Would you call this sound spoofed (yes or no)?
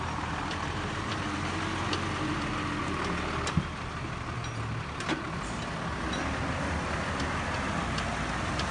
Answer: no